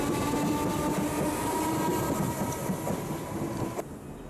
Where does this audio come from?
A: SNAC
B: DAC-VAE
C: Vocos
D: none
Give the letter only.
D